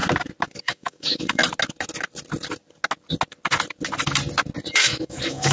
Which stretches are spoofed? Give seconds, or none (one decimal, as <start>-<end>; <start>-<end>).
0.6-1.4; 4.7-5.5